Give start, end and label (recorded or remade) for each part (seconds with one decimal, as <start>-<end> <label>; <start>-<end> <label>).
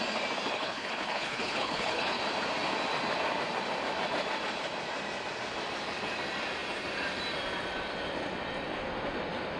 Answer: 0.0-0.5 recorded; 0.5-2.2 remade; 2.2-9.6 recorded